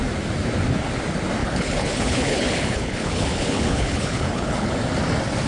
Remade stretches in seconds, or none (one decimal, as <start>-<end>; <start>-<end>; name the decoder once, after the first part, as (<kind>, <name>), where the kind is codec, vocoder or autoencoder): 1.4-4.7 (codec, HILCodec)